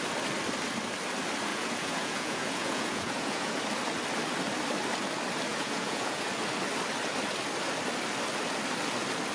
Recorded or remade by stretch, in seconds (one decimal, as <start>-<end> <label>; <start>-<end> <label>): 0.0-1.5 recorded; 1.5-3.6 remade; 3.6-5.5 recorded; 5.5-6.3 remade; 6.3-9.3 recorded